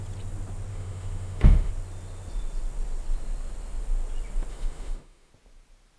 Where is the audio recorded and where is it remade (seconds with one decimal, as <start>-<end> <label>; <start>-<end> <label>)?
0.0-0.7 recorded; 0.7-1.7 remade; 1.7-4.5 recorded; 4.5-5.3 remade; 5.3-6.0 recorded